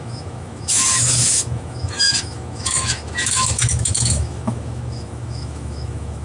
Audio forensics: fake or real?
fake